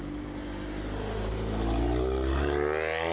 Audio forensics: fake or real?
real